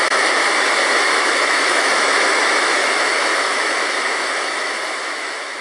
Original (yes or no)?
no